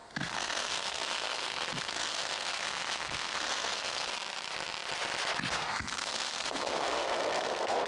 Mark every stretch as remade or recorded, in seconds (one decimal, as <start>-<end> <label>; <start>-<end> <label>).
0.0-4.1 remade; 4.1-5.5 recorded; 5.5-7.9 remade